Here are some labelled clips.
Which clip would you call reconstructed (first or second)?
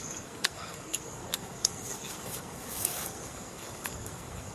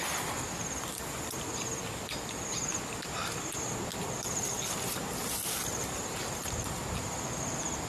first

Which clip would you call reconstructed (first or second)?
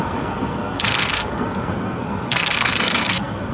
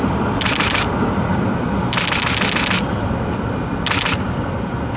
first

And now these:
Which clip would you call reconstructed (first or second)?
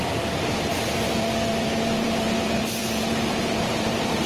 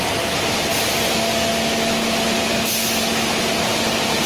first